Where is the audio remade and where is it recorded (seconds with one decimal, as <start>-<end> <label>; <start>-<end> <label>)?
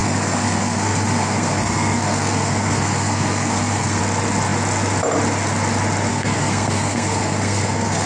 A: 0.0-4.0 remade; 4.0-6.1 recorded; 6.1-8.1 remade